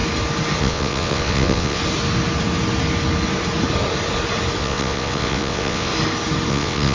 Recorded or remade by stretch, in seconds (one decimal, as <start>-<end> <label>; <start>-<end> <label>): 0.0-0.6 recorded; 0.6-1.8 remade; 1.8-4.6 recorded; 4.6-5.9 remade; 5.9-6.5 recorded; 6.5-6.9 remade